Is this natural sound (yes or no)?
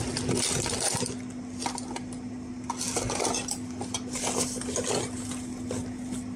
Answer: yes